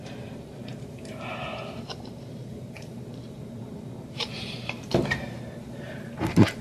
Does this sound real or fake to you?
fake